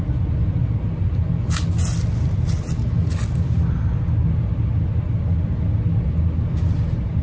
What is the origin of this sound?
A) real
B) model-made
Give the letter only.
A